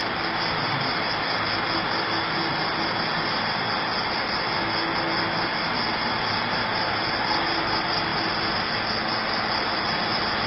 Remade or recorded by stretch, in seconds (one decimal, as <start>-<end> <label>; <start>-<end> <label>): 0.0-10.5 recorded